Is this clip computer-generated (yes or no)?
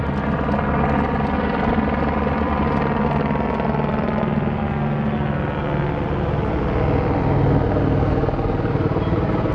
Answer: no